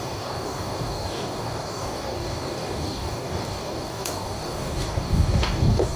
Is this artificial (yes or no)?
yes